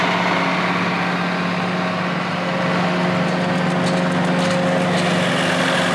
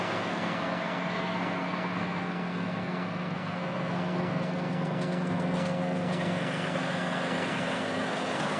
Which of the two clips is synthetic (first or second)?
second